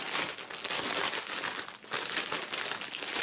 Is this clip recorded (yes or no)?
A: yes